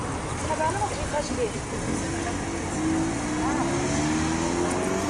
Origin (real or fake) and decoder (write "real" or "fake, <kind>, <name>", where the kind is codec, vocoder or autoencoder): real